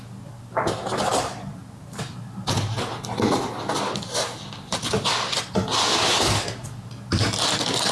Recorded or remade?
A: recorded